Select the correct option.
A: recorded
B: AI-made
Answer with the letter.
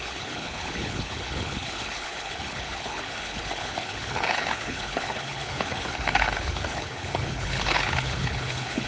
B